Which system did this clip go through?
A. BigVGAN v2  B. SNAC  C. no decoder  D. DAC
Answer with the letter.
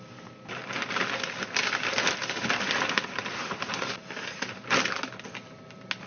C